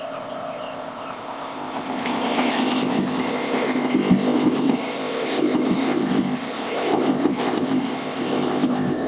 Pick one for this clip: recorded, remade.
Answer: remade